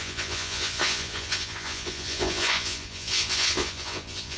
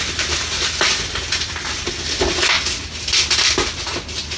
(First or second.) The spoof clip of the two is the first